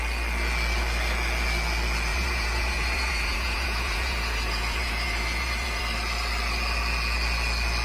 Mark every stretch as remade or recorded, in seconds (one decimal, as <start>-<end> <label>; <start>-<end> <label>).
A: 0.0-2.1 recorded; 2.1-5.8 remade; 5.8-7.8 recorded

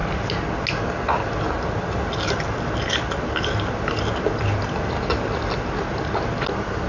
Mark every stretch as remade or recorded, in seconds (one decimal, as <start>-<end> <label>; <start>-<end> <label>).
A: 0.0-6.9 recorded

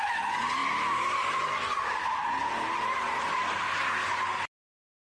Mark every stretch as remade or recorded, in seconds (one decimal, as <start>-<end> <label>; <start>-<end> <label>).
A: 0.0-5.0 recorded

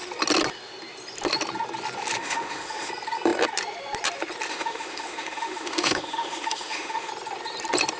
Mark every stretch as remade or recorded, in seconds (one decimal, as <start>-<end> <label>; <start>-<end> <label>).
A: 0.0-2.2 recorded; 2.2-2.9 remade; 2.9-4.5 recorded; 4.5-7.1 remade; 7.1-8.0 recorded